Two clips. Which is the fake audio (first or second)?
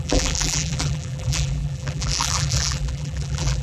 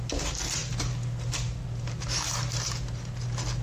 first